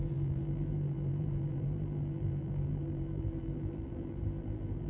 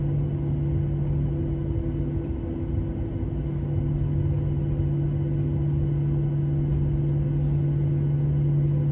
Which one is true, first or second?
second